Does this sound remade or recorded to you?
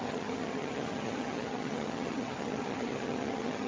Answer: remade